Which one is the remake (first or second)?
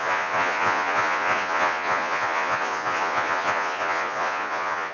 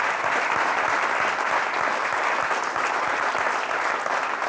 first